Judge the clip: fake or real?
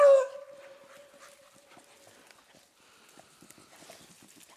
real